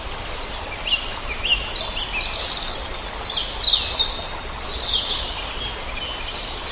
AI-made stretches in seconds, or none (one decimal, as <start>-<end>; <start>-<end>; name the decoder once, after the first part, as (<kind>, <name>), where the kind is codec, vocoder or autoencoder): none